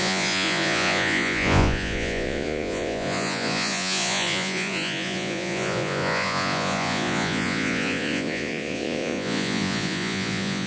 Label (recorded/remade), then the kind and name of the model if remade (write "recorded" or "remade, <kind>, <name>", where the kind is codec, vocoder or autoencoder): remade, vocoder, Vocos